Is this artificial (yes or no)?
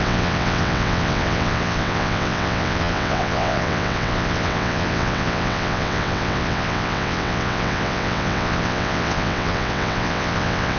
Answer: yes